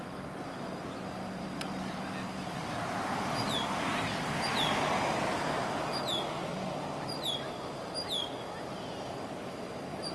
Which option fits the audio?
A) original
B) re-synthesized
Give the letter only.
A